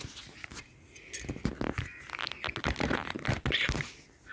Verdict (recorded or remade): recorded